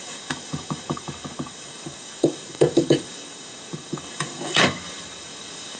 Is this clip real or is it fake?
fake